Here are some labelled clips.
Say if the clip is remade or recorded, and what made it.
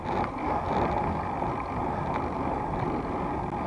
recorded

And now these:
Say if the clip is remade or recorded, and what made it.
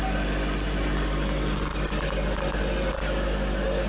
recorded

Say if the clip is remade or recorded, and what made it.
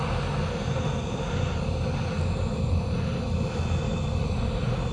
recorded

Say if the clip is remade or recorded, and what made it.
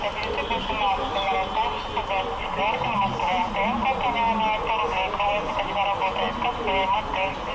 recorded